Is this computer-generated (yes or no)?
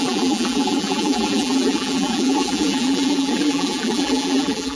yes